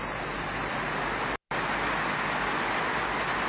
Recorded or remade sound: recorded